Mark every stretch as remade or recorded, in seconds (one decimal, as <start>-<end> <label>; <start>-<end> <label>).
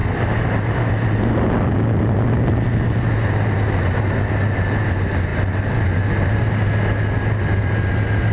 0.0-8.3 recorded